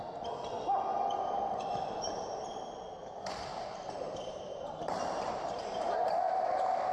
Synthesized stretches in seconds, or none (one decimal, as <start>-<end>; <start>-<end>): 0.9-2.5; 3.5-5.7